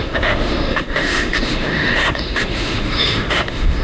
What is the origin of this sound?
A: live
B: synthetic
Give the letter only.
B